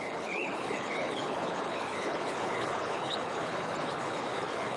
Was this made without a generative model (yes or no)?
no